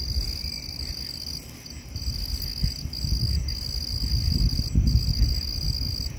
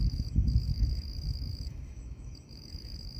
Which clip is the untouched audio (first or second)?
first